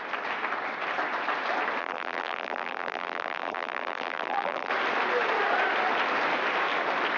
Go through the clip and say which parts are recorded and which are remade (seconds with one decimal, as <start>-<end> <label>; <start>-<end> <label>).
0.0-1.8 recorded; 1.8-4.7 remade; 4.7-7.2 recorded